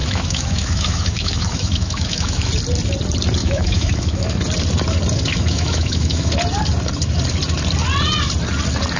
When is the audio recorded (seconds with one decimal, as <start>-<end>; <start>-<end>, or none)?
2.5-3.4; 4.3-5.3; 6.3-9.0